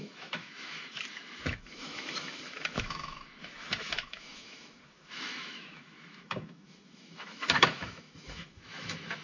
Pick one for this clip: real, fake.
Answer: fake